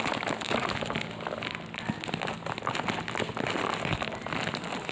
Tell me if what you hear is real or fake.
real